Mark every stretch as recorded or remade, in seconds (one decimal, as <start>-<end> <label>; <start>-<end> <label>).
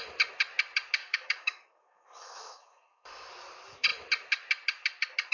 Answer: 0.0-1.0 recorded; 1.0-3.3 remade; 3.3-5.3 recorded